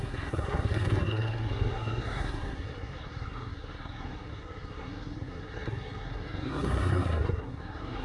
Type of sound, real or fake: fake